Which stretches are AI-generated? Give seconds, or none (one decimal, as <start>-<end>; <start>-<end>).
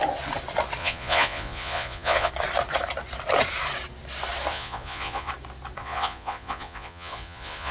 0.8-2.3; 4.5-5.3; 5.8-7.7